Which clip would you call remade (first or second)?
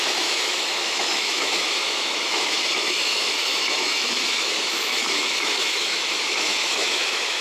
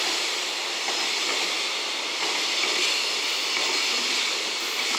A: first